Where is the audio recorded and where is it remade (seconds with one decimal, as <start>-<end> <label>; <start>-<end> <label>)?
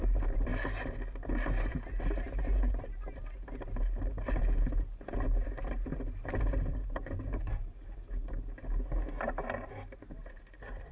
0.0-0.5 remade; 0.5-1.7 recorded; 1.7-10.9 remade